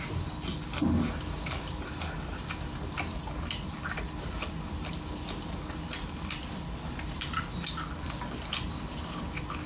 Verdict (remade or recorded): recorded